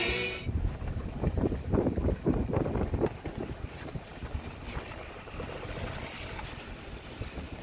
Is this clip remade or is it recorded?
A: recorded